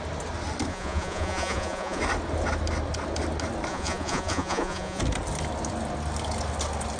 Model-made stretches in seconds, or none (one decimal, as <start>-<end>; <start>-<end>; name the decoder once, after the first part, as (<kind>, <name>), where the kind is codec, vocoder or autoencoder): 0.7-2.0 (vocoder, Vocos); 3.7-5.0